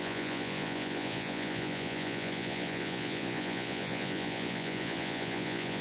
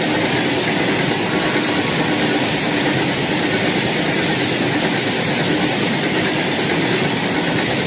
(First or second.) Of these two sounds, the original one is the second